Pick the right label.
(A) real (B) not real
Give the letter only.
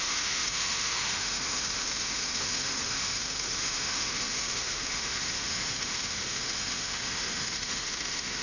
B